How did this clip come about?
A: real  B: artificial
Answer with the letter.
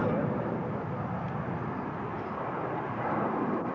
A